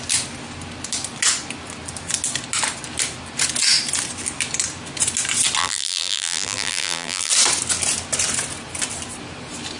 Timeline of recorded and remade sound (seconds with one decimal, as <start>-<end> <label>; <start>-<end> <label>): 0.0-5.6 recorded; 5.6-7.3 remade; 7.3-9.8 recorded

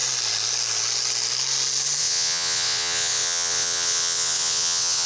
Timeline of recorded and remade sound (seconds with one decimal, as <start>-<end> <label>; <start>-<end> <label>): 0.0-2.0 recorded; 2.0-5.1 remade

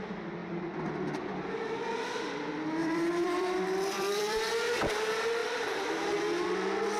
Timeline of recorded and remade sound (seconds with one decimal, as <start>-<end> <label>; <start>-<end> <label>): 0.0-2.8 recorded; 2.8-4.5 remade; 4.5-5.4 recorded; 5.4-6.2 remade; 6.2-7.0 recorded

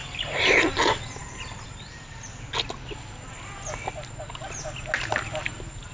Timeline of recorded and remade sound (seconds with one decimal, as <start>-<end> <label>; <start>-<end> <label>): 0.0-5.9 recorded

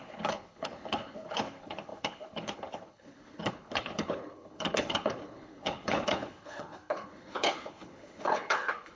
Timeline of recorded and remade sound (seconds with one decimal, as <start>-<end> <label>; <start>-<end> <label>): 0.0-9.0 remade

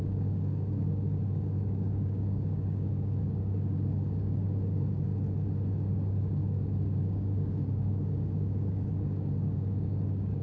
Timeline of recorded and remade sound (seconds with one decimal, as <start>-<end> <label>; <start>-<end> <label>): 0.0-5.1 remade; 5.1-5.9 recorded; 5.9-10.4 remade